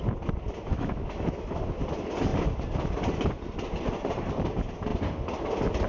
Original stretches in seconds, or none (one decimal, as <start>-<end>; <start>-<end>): 0.0-0.7; 1.6-5.9